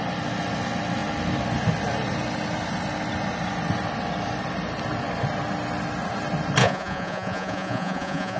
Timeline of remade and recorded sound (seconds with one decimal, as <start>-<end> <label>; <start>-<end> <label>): 0.0-6.6 recorded; 6.6-8.4 remade